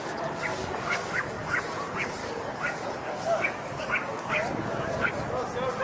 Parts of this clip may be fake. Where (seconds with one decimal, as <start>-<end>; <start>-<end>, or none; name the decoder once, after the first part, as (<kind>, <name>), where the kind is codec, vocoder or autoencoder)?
0.5-1.6 (codec, DAC); 2.2-5.1